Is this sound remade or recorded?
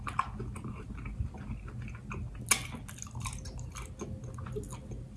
recorded